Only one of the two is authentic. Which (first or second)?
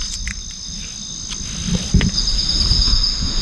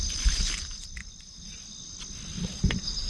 first